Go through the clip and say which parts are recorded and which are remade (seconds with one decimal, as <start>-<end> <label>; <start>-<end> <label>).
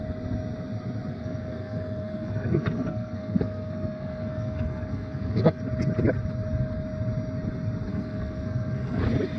0.0-1.1 recorded; 1.1-5.6 remade; 5.6-7.9 recorded; 7.9-9.0 remade; 9.0-9.4 recorded